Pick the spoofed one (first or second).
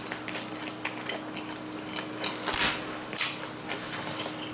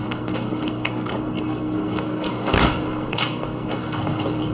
second